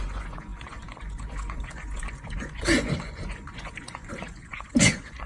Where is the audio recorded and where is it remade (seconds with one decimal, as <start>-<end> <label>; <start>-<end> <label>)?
0.0-5.3 remade